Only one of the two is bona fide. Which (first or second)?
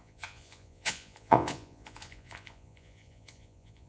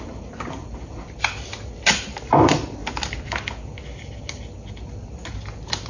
second